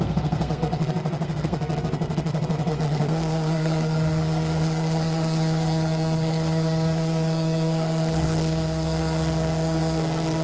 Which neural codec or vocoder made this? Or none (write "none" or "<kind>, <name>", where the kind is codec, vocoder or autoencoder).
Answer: codec, SNAC